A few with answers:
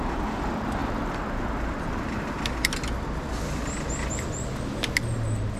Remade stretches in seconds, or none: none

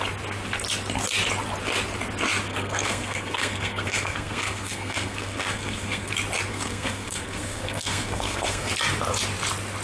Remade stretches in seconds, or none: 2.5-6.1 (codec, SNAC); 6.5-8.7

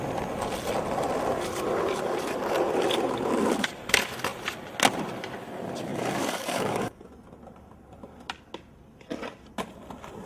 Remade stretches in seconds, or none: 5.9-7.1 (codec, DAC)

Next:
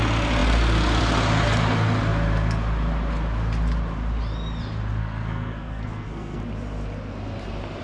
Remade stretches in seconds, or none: 5.0-6.4 (codec, SNAC)

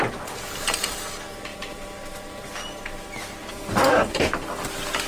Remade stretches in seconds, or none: 1.5-2.5 (vocoder, BigVGAN v2); 3.4-4.2

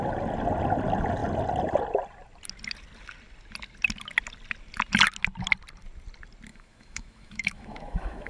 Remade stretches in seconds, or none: 6.5-8.3 (autoencoder, DAC-VAE)

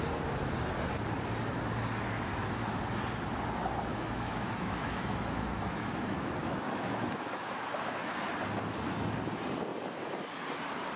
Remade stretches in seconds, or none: 2.3-2.8 (autoencoder, DAC-VAE); 3.9-8.1